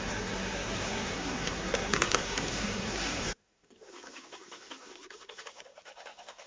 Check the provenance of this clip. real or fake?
fake